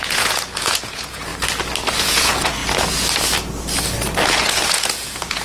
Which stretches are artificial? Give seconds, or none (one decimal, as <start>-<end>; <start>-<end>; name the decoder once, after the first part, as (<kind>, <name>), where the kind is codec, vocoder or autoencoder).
0.0-1.3 (vocoder, Vocos); 2.0-2.6; 4.3-5.4